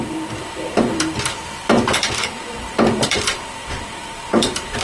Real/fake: fake